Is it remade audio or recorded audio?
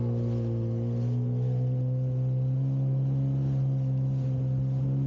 recorded